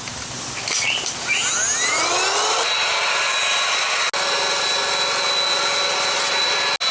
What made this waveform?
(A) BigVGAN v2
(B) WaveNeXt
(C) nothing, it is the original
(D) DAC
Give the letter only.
C